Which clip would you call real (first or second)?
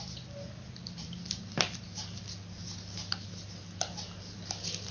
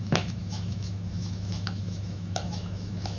first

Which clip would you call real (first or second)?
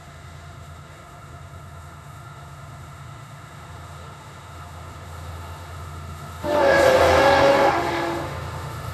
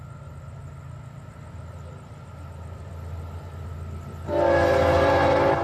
second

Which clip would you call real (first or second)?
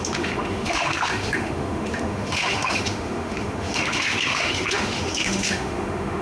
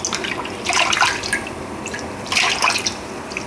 second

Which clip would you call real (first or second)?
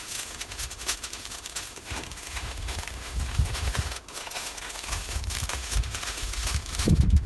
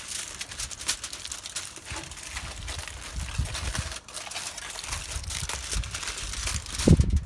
second